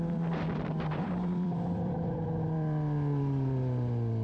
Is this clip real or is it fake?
fake